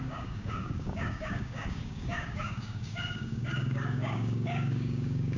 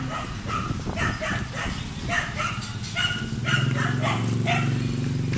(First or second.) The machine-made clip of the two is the first